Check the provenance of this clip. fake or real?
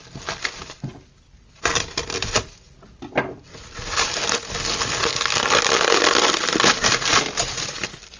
real